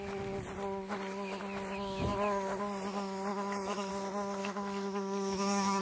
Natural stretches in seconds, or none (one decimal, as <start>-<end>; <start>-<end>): 0.0-3.3; 3.9-4.4